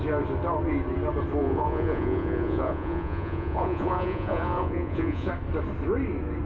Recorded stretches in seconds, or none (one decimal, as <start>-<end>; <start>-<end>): 0.0-1.4; 5.3-6.5

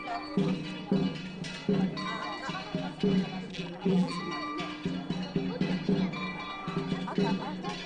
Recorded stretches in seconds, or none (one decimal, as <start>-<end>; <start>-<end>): 0.0-3.5; 4.2-7.9

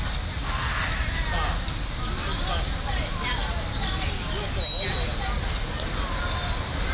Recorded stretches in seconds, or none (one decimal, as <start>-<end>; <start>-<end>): 0.0-6.9

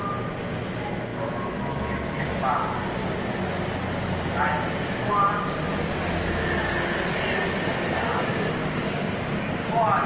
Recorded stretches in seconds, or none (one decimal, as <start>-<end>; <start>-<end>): 0.0-8.6; 9.7-10.1

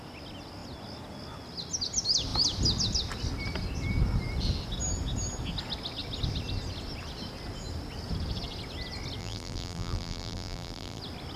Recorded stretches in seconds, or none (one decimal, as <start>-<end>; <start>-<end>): 0.0-9.2; 11.0-11.4